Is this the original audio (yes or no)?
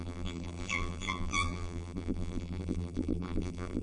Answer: no